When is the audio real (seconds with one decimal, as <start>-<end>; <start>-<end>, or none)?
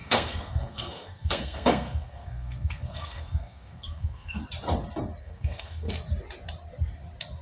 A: 4.4-5.2; 5.9-7.4